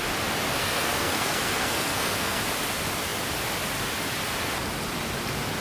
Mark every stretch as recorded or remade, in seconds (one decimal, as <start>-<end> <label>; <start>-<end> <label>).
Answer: 0.0-0.6 recorded; 0.6-2.4 remade; 2.4-5.6 recorded